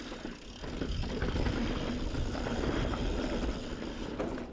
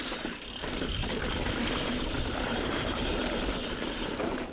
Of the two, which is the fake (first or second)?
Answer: second